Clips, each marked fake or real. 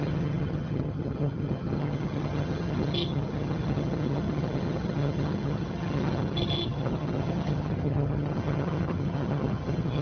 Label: fake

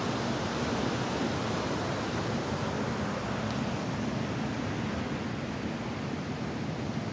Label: real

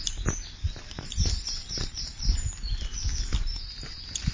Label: real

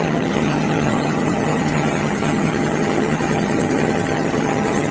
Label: fake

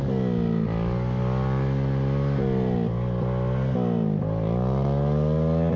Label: real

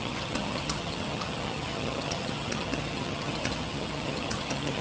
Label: fake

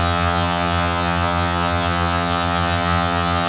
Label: fake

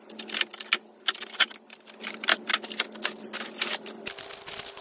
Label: real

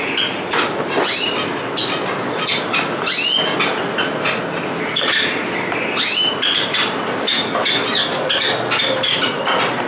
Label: real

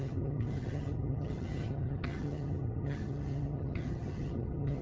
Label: fake